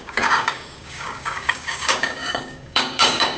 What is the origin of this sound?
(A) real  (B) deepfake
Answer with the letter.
B